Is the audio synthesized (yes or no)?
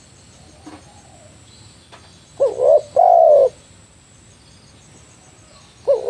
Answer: no